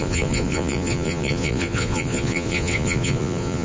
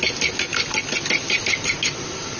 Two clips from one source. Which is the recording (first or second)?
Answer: second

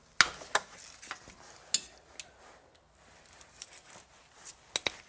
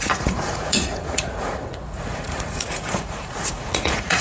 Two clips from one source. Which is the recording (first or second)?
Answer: first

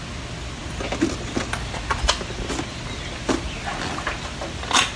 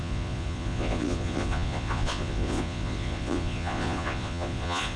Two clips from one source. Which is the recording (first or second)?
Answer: first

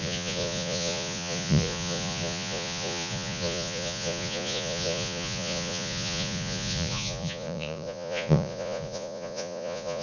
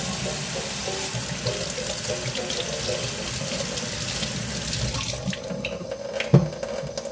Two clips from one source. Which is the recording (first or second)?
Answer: second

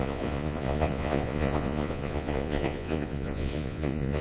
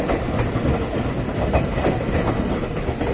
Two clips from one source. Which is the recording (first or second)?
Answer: second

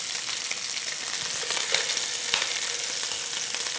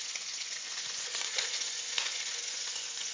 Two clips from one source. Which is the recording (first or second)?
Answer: first